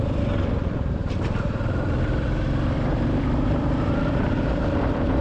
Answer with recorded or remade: remade